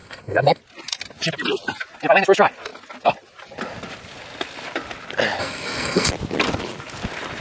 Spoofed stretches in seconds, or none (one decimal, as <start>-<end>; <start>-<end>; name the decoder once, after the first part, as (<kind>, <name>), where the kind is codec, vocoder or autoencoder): 0.0-0.6 (codec, SNAC); 5.4-6.1